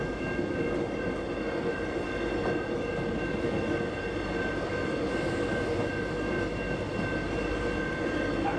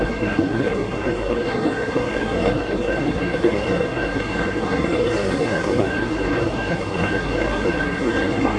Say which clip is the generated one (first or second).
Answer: second